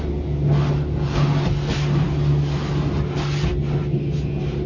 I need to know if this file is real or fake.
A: real